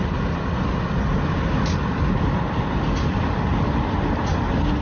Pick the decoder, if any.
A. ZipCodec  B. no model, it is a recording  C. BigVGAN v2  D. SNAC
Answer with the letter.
B